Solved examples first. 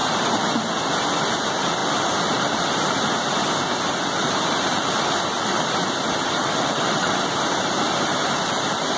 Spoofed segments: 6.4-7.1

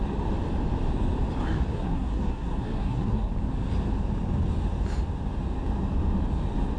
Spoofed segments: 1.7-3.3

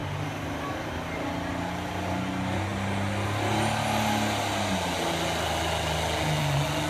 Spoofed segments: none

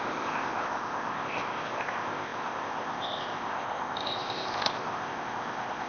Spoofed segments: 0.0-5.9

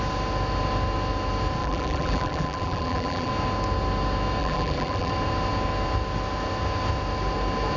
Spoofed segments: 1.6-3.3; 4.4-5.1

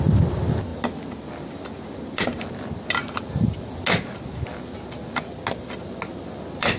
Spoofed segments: none

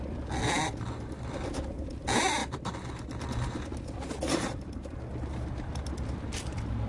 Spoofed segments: none

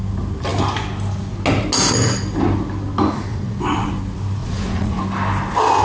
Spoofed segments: 3.3-3.9; 4.4-5.0